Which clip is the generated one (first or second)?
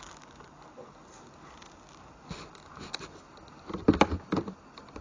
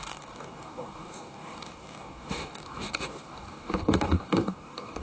second